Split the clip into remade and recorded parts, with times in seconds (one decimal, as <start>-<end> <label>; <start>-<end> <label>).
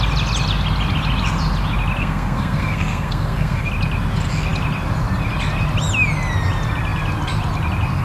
0.0-2.0 recorded; 2.0-3.7 remade; 3.7-8.0 recorded